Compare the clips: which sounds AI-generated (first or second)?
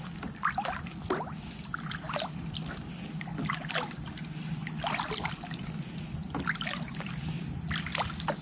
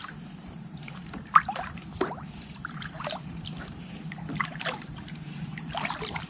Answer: second